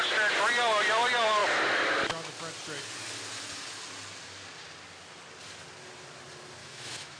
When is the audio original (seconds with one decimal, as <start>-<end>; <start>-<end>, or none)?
0.0-6.6

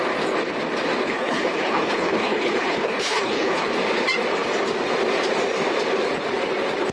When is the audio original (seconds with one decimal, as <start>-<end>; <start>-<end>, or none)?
0.0-1.0; 3.7-6.9